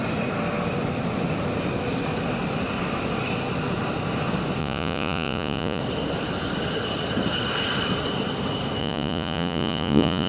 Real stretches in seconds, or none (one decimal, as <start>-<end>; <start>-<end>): 0.0-4.6; 5.8-8.8